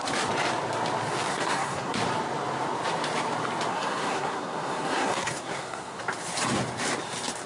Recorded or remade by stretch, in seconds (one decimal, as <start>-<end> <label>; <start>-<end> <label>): 0.0-1.3 recorded; 1.3-2.0 remade; 2.0-3.7 recorded; 3.7-6.0 remade; 6.0-7.5 recorded